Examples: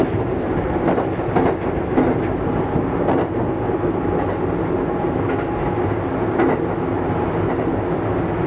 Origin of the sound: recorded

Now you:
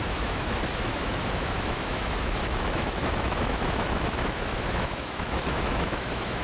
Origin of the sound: remade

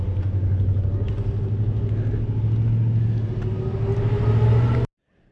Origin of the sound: recorded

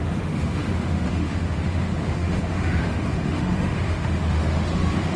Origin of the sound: remade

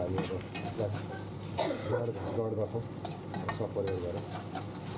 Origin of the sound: recorded